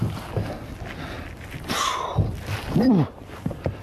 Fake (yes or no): no